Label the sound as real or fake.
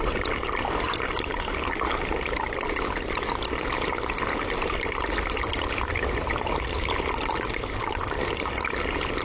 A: real